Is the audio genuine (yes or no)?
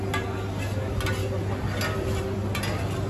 yes